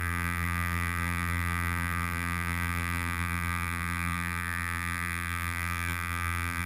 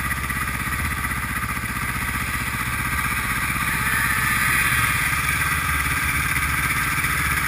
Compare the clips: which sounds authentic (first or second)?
second